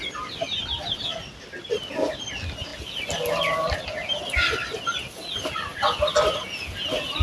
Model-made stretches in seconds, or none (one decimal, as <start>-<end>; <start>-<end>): none